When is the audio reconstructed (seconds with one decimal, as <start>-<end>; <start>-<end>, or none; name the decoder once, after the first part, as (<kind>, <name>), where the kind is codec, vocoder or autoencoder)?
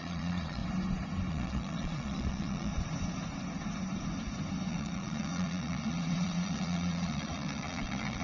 0.0-0.6 (vocoder, Vocos); 1.3-2.7; 4.7-8.2